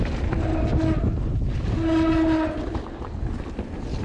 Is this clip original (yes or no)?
yes